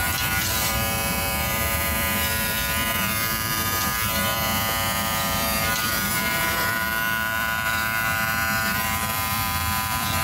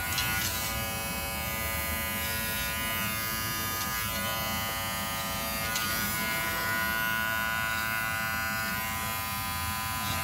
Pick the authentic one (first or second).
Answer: second